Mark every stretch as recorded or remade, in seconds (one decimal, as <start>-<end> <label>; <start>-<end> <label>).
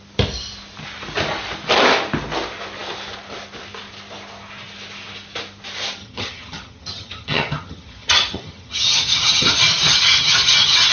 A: 0.0-6.0 recorded; 6.0-9.5 remade; 9.5-9.9 recorded; 9.9-10.9 remade